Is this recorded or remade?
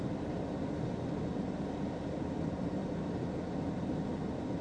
recorded